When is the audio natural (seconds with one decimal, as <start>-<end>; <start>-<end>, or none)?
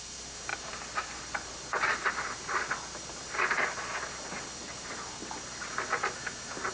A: 0.0-0.5; 2.1-4.6; 5.3-6.7